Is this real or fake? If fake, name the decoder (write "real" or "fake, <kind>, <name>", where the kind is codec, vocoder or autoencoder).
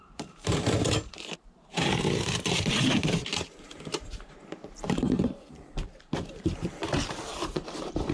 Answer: fake, vocoder, BigVGAN v2